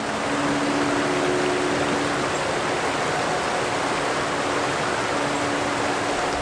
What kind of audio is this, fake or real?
real